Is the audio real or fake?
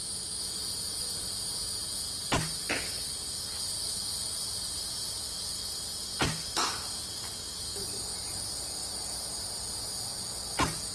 real